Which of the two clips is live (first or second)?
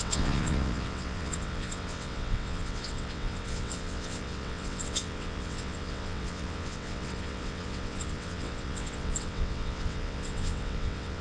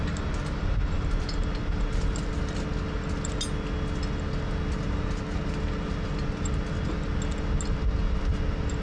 second